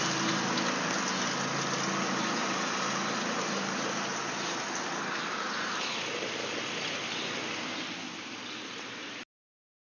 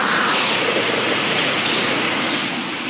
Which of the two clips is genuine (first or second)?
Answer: first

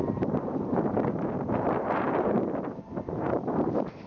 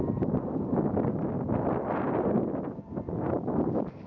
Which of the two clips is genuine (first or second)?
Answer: second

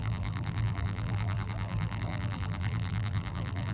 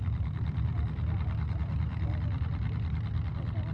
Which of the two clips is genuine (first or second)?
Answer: second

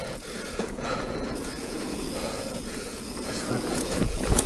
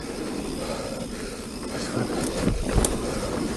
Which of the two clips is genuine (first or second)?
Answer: second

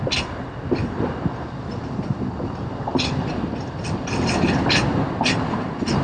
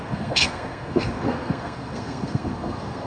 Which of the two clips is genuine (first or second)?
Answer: first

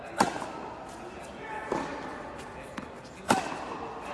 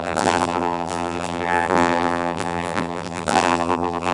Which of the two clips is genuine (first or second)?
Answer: first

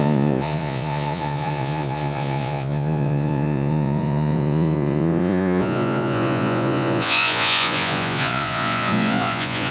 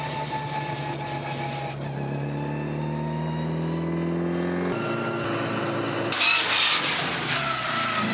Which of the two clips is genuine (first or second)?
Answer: second